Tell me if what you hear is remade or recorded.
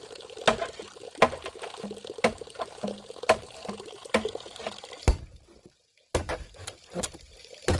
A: recorded